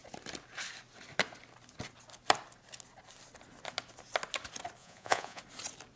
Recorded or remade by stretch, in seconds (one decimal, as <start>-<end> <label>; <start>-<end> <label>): 0.0-4.8 recorded; 4.8-5.4 remade; 5.4-6.0 recorded